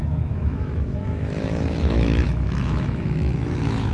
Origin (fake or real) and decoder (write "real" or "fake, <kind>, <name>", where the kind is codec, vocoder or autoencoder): fake, autoencoder, DAC-VAE